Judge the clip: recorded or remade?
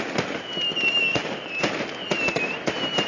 recorded